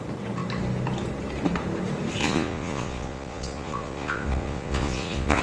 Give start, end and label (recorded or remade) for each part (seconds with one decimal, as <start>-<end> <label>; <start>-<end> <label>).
0.0-2.2 recorded; 2.2-5.4 remade

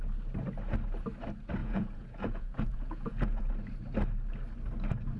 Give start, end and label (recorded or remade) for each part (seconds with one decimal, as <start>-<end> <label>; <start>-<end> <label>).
0.0-1.6 recorded; 1.6-3.5 remade; 3.5-5.2 recorded

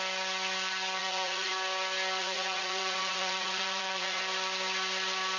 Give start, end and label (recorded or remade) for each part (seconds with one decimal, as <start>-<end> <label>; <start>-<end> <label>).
0.0-1.0 recorded; 1.0-1.5 remade; 1.5-2.2 recorded; 2.2-4.2 remade; 4.2-5.4 recorded

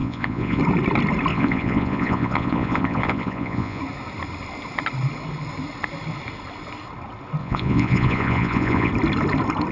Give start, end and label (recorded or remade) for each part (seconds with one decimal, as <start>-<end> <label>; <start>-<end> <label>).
0.0-0.6 remade; 0.6-1.3 recorded; 1.3-3.8 remade; 3.8-7.4 recorded; 7.4-8.9 remade; 8.9-9.7 recorded

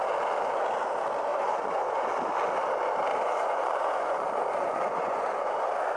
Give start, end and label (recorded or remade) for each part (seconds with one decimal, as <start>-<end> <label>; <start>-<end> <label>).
0.0-1.3 recorded; 1.3-2.1 remade; 2.1-3.1 recorded; 3.1-5.6 remade; 5.6-6.0 recorded